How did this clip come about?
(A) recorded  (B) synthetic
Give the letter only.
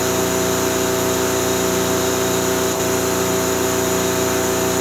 A